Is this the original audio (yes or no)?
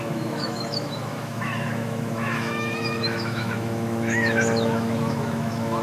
no